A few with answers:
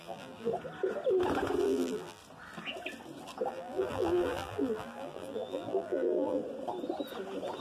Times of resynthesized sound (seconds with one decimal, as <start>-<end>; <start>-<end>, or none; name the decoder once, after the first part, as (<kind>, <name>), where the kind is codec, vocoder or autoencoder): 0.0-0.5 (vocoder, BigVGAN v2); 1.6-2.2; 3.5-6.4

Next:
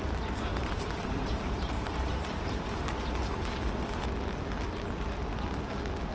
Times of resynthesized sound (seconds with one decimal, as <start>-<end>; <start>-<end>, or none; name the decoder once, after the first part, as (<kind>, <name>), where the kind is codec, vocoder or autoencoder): 0.5-3.1 (vocoder, BigVGAN v2)

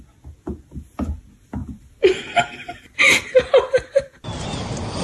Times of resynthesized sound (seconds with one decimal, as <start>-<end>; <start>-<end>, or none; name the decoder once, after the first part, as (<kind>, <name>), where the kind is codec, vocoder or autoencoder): 1.6-3.6 (vocoder, BigVGAN v2)

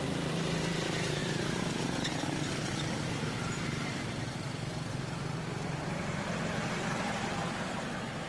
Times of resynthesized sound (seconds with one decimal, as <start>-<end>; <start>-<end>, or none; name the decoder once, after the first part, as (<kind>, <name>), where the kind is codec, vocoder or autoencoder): 0.0-8.3 (vocoder, BigVGAN v2)

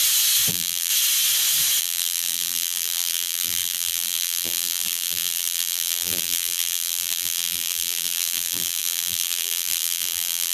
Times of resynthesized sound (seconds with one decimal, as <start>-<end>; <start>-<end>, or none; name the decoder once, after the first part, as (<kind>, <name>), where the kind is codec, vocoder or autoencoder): 0.5-0.9 (vocoder, BigVGAN v2); 1.8-10.5

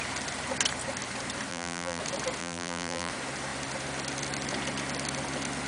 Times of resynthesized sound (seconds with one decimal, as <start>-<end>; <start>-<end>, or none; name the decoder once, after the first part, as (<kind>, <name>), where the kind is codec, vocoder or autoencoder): 1.5-2.0 (vocoder, BigVGAN v2); 2.4-3.1